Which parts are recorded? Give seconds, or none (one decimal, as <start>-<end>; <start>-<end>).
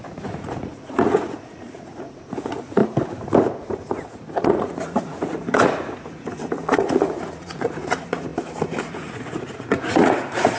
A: 2.8-3.8; 8.3-8.8